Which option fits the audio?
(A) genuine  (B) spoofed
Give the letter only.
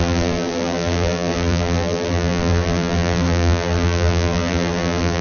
B